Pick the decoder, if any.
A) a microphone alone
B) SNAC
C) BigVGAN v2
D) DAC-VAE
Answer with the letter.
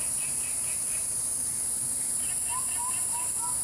A